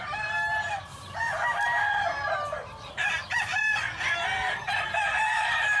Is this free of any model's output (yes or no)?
yes